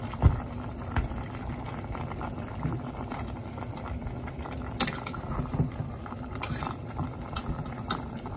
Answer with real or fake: real